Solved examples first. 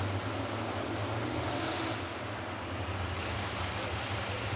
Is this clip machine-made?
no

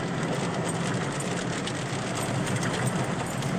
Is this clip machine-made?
no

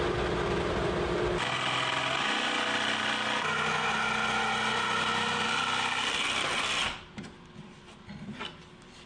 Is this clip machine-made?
no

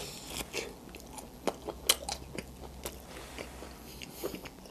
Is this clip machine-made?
no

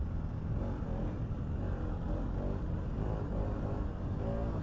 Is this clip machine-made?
no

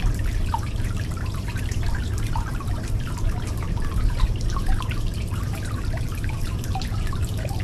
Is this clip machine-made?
yes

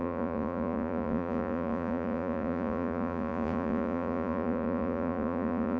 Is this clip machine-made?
yes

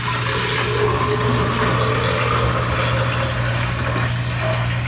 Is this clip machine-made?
no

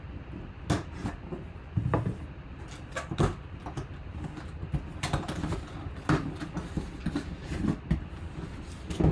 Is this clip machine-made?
no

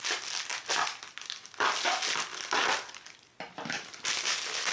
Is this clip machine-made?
no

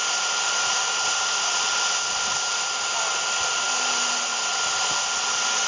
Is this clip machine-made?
no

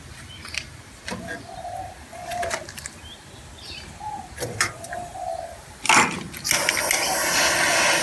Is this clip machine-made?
no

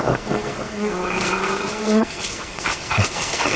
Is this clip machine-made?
yes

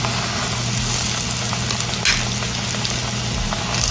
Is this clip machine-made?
no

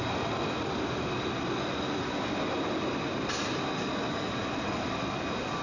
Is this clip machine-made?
no